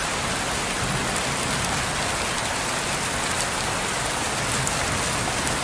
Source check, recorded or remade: recorded